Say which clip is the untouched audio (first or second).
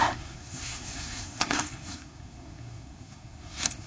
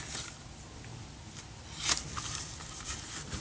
second